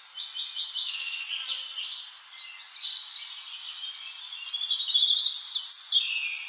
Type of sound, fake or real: real